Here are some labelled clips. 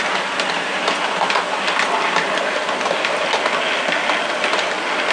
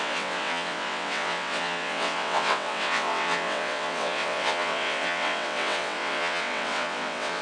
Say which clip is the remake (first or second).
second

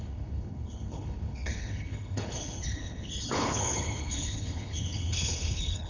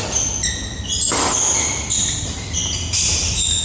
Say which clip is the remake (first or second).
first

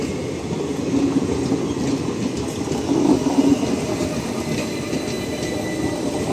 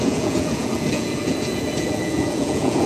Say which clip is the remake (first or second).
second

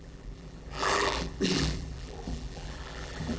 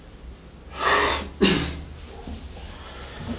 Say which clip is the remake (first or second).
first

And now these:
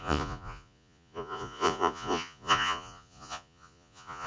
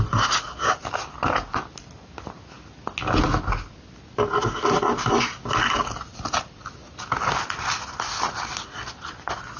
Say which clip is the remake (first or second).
first